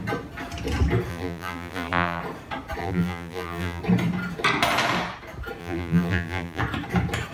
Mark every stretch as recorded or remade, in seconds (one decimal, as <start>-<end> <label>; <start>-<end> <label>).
0.0-1.1 recorded; 1.1-2.2 remade; 2.2-2.8 recorded; 2.8-3.8 remade; 3.8-5.6 recorded; 5.6-6.6 remade; 6.6-7.3 recorded